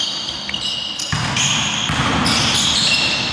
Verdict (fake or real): real